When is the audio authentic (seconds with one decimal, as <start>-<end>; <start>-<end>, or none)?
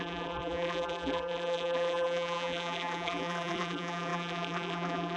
none